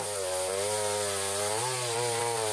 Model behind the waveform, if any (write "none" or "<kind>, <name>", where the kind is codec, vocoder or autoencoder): none